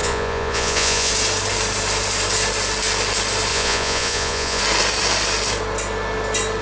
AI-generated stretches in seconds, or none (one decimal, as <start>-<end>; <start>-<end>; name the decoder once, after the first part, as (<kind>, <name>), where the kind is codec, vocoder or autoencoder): 0.0-1.1 (vocoder, Vocos); 3.5-4.6